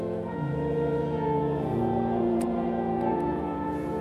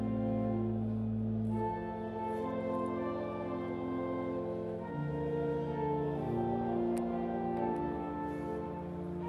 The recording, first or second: second